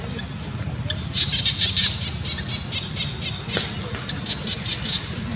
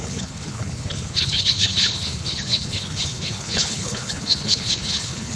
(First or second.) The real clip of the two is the first